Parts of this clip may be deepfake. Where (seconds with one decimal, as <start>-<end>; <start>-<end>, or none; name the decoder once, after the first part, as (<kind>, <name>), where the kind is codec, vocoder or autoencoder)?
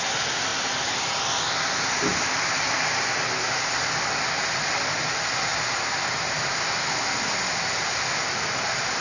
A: none